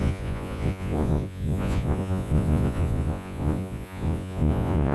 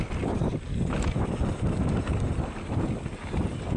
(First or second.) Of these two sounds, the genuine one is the second